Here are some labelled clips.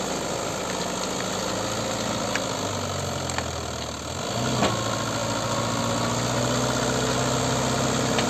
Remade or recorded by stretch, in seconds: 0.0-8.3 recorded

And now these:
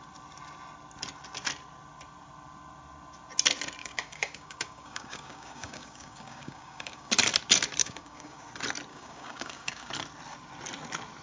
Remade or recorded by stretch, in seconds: 0.0-3.8 recorded; 3.8-7.1 remade; 7.1-7.8 recorded; 7.8-8.4 remade; 8.4-8.9 recorded; 8.9-9.9 remade; 9.9-11.2 recorded

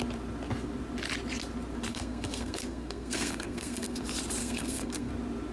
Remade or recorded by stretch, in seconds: 0.0-1.9 recorded; 1.9-4.0 remade; 4.0-4.4 recorded; 4.4-5.1 remade; 5.1-5.5 recorded